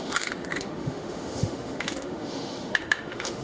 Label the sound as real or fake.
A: fake